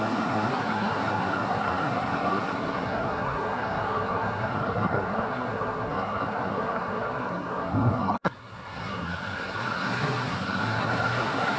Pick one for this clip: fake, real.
fake